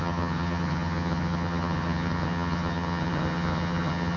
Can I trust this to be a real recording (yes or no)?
no